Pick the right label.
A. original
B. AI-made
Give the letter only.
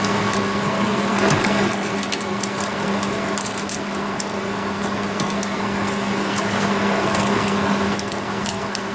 B